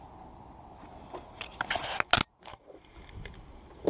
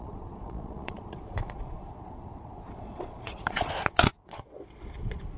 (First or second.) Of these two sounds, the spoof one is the second